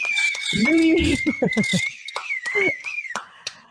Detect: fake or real fake